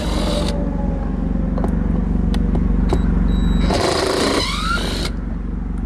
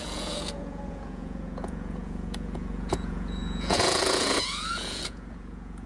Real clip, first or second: first